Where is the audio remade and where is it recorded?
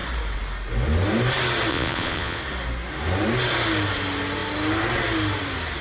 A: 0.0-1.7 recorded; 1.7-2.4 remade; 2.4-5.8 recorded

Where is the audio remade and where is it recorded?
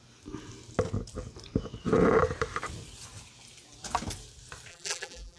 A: 0.0-4.7 recorded; 4.7-5.4 remade